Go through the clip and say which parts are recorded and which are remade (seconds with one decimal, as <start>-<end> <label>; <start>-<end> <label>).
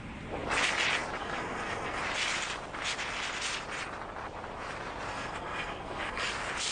0.0-1.2 recorded; 1.2-2.0 remade; 2.0-5.1 recorded; 5.1-6.3 remade; 6.3-6.7 recorded